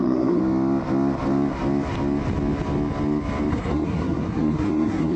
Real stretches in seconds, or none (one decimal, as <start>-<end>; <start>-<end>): 0.4-3.5